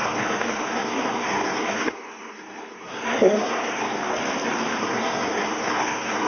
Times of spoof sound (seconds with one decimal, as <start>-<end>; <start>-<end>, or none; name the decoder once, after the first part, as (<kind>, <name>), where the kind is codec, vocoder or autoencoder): 0.0-4.0 (codec, SNAC); 4.8-6.3